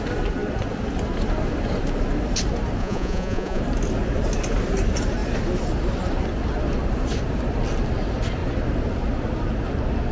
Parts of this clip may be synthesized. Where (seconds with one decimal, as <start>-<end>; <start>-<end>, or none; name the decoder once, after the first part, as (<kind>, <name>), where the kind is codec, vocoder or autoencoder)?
2.8-3.6 (vocoder, Vocos)